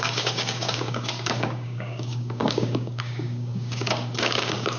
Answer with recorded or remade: remade